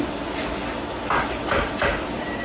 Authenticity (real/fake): fake